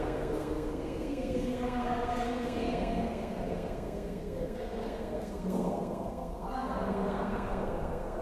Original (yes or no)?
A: no